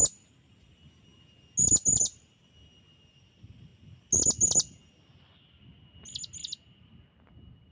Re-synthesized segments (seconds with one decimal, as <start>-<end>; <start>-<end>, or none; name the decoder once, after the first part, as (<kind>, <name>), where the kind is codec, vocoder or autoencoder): none

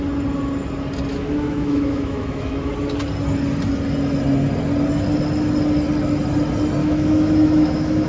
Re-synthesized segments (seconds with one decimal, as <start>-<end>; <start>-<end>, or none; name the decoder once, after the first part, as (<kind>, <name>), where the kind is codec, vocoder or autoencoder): 1.1-2.7 (autoencoder, DAC-VAE); 6.8-8.1

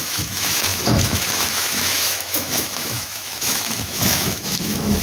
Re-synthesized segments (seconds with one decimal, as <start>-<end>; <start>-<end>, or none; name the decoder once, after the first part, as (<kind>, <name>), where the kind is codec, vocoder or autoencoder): 0.0-5.0 (autoencoder, DAC-VAE)

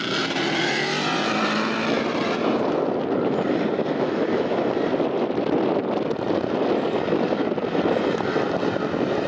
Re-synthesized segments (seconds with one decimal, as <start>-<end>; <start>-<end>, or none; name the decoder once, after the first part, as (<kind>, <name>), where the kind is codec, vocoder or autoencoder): 3.9-4.6 (autoencoder, DAC-VAE)

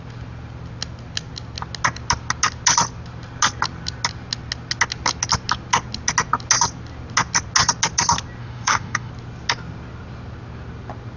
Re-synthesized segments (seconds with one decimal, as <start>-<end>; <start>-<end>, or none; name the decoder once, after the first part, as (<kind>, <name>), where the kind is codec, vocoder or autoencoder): 8.4-9.1 (autoencoder, DAC-VAE)

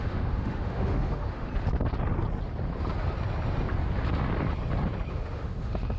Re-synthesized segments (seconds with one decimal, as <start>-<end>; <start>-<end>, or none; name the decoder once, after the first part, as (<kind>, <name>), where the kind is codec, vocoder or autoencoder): 0.0-1.5 (autoencoder, DAC-VAE); 5.1-6.0

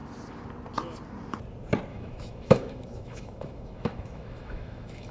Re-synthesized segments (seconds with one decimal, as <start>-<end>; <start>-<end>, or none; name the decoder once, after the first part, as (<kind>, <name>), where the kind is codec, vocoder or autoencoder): 1.9-5.1 (autoencoder, DAC-VAE)